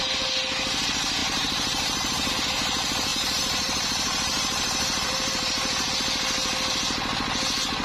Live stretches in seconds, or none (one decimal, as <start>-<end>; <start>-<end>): 0.0-1.2; 2.3-3.1; 5.9-7.8